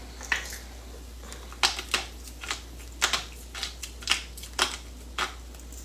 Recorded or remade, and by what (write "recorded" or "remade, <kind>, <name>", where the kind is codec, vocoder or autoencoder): recorded